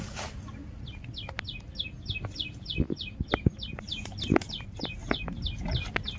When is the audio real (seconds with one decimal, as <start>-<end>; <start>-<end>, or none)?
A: 0.6-3.8